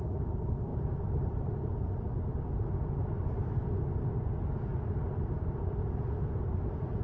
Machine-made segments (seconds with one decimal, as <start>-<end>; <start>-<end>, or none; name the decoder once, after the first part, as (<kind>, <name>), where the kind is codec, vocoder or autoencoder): none